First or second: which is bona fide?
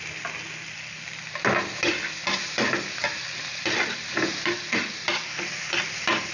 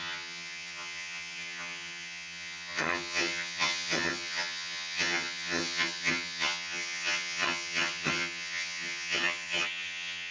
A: first